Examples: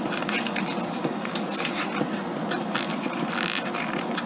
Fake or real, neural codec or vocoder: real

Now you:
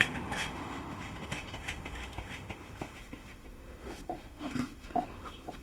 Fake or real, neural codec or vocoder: fake, autoencoder, DAC-VAE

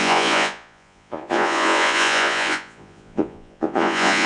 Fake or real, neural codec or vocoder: fake, vocoder, Vocos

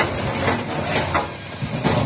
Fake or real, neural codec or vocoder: real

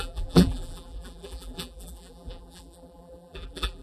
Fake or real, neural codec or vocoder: fake, vocoder, BigVGAN v2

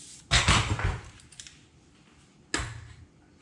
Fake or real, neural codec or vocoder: real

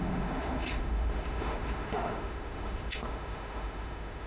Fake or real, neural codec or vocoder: fake, autoencoder, DAC-VAE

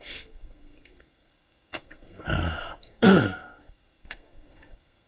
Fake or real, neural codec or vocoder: fake, codec, SNAC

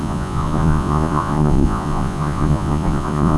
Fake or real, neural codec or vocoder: fake, vocoder, Vocos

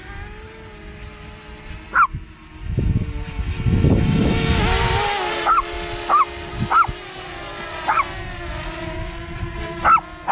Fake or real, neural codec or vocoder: real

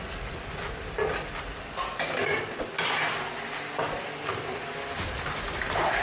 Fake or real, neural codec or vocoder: fake, vocoder, BigVGAN v2